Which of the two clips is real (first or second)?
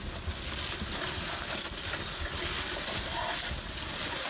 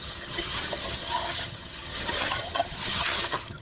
first